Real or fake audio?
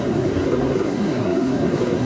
fake